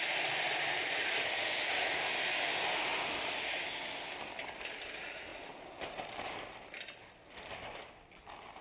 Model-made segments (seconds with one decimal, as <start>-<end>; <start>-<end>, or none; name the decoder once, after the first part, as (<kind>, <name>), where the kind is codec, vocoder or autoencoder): none